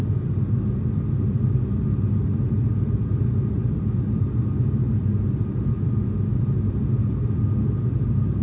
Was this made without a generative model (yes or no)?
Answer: yes